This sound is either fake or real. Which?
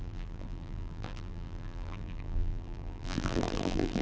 fake